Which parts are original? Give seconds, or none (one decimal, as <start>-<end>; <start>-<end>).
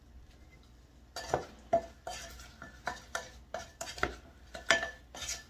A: 0.0-5.5